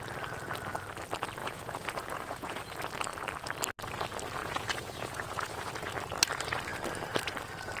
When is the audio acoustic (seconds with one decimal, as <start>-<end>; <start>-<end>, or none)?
0.0-1.4; 2.6-4.4; 5.7-7.8